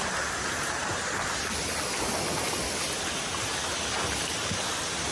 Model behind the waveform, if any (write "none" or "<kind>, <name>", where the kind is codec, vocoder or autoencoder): none